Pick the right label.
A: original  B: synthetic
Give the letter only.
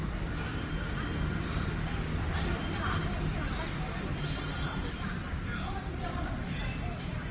B